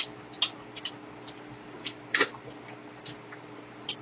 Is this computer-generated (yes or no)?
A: no